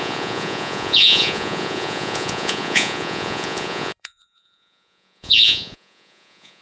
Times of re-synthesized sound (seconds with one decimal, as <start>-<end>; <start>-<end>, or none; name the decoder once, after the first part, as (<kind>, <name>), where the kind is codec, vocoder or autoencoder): 0.0-6.6 (vocoder, Vocos)